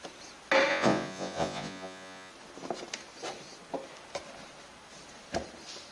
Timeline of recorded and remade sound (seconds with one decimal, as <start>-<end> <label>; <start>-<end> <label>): 0.0-0.7 recorded; 0.7-2.3 remade; 2.3-5.9 recorded